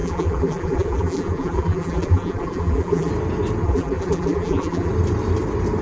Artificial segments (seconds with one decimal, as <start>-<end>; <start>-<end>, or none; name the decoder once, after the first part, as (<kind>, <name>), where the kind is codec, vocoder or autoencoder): 0.0-3.1 (vocoder, BigVGAN v2); 3.6-4.9